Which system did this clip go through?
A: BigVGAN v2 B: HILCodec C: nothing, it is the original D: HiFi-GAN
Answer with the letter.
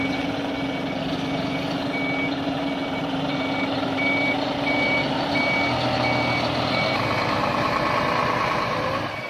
C